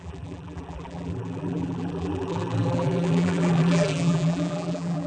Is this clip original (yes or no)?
no